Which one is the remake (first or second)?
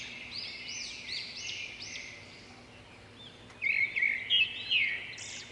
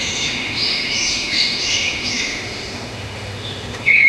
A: second